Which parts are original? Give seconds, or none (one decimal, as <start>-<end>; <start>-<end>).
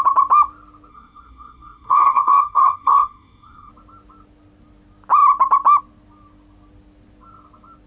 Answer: 0.0-0.9; 3.7-7.9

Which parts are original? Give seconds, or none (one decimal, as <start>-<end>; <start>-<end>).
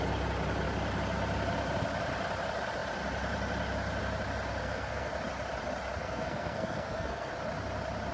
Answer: 0.0-4.6; 5.1-6.0; 7.3-8.1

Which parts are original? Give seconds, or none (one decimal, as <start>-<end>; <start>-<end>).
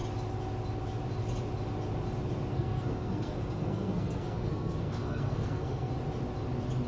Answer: 0.0-2.5; 5.9-6.9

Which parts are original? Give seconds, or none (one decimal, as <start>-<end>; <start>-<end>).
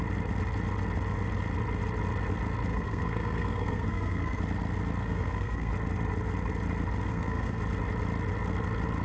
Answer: 0.0-2.7; 4.4-5.0; 5.7-7.1; 7.6-9.0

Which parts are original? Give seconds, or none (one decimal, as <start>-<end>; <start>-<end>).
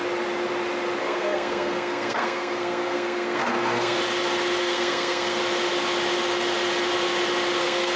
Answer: 0.0-1.0; 4.0-4.6; 5.4-7.6